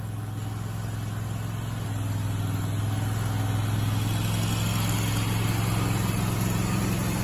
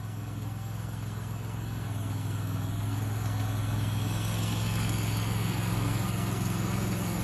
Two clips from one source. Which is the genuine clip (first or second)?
first